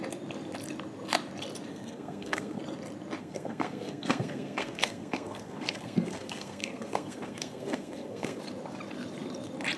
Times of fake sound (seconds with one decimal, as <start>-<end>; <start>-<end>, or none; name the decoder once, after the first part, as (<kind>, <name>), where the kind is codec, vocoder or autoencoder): 1.7-2.6 (codec, SNAC); 3.2-8.4